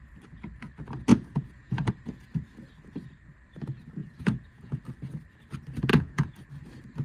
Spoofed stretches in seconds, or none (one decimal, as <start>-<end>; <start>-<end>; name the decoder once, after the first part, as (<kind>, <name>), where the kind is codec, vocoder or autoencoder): 1.1-1.9 (vocoder, Vocos); 4.0-4.8; 5.9-6.5